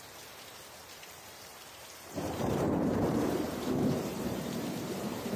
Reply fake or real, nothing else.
fake